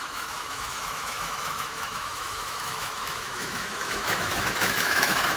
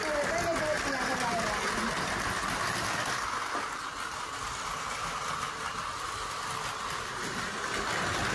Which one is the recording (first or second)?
second